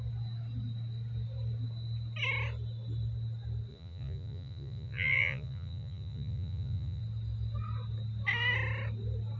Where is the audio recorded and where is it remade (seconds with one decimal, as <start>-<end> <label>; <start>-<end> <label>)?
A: 0.0-3.7 recorded; 3.7-7.0 remade; 7.0-9.4 recorded